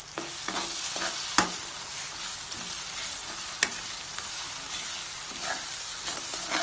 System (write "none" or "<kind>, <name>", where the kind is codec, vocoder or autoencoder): none